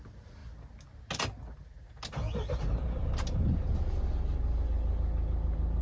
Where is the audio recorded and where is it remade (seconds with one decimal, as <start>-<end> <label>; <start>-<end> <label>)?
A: 0.0-5.8 recorded